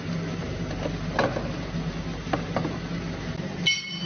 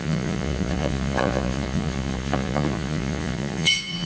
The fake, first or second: second